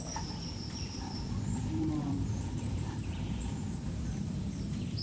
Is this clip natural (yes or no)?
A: no